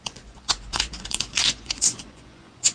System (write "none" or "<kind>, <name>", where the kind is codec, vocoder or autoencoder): vocoder, Vocos